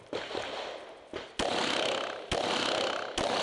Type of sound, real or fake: real